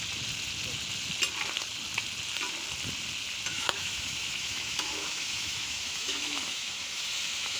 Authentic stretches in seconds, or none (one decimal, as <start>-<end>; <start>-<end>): 0.0-3.5